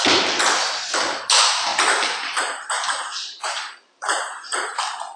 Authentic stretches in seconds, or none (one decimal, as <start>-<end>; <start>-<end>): 0.0-1.7; 4.8-5.2